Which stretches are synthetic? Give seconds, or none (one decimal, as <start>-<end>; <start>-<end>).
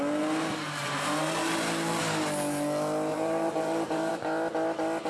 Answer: 0.8-2.0; 3.1-4.1